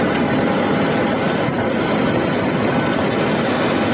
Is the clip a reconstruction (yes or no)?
no